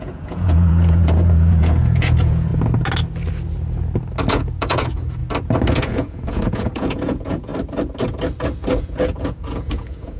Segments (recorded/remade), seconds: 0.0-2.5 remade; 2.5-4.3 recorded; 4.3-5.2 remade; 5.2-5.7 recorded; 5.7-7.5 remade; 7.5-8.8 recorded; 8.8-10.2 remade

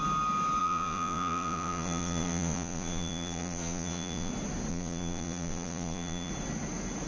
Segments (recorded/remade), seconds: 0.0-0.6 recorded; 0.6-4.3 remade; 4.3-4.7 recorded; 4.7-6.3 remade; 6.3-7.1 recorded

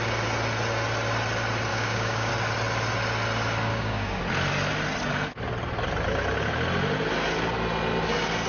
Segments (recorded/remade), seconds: 0.0-1.7 recorded; 1.7-2.3 remade; 2.3-3.7 recorded; 3.7-4.2 remade; 4.2-8.5 recorded